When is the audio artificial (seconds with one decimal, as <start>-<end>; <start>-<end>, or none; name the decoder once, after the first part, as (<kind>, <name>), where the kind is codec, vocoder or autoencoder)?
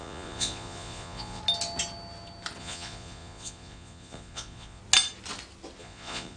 0.0-1.4 (vocoder, Vocos); 2.6-4.8; 5.8-6.4